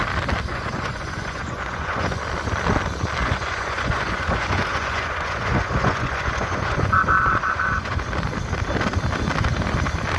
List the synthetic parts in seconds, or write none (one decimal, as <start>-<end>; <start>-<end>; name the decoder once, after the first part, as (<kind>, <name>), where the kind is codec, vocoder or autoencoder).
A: 0.5-2.2 (vocoder, Vocos); 3.2-8.1